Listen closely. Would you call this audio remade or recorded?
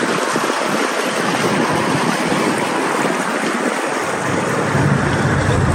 recorded